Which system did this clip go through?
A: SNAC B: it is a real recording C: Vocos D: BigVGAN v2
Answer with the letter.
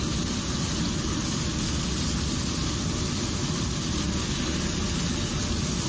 B